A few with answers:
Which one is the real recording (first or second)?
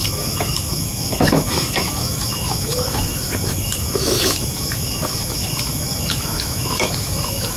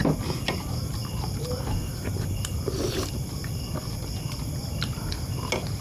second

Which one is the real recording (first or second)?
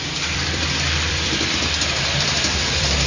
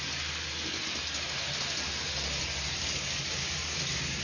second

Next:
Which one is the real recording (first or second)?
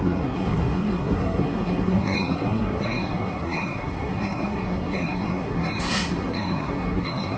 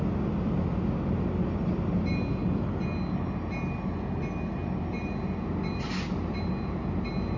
second